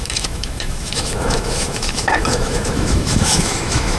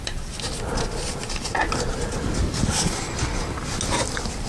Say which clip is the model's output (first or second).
first